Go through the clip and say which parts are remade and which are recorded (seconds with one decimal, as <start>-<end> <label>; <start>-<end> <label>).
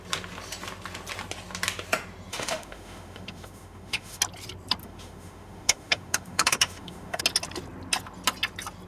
0.0-2.3 recorded; 2.3-4.2 remade; 4.2-4.8 recorded; 4.8-7.2 remade; 7.2-8.9 recorded